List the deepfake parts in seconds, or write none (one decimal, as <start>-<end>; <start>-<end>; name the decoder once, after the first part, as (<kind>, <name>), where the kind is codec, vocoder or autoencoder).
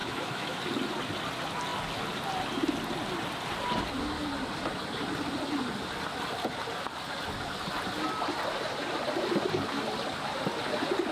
0.0-0.6 (autoencoder, DAC-VAE)